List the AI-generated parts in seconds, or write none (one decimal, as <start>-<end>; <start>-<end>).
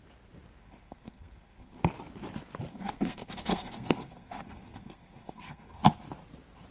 0.6-1.8; 2.7-5.8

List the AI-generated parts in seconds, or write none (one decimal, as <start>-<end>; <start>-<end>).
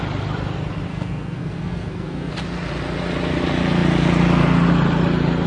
0.9-2.3